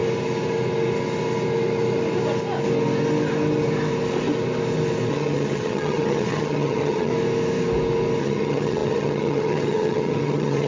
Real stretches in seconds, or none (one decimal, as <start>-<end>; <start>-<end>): 0.0-5.1; 7.1-8.2